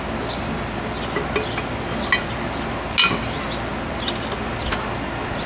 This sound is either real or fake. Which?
real